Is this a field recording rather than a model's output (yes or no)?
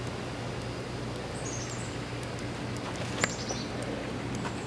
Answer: yes